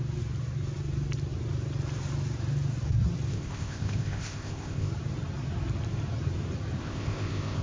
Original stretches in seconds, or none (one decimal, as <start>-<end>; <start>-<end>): 0.0-3.3; 4.9-6.8